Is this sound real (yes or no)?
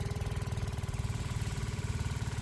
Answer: no